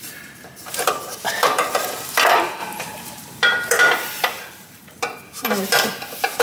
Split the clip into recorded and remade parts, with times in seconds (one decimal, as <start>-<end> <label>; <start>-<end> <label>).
0.0-6.4 remade